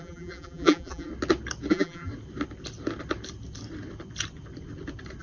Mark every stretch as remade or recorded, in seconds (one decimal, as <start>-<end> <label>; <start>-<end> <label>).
0.0-1.1 remade; 1.1-1.7 recorded; 1.7-2.1 remade; 2.1-5.2 recorded